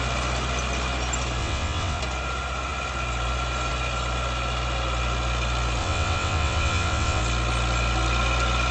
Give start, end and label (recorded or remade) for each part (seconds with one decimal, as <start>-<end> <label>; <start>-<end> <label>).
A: 0.0-1.4 recorded; 1.4-2.0 remade; 2.0-5.8 recorded; 5.8-7.2 remade; 7.2-8.7 recorded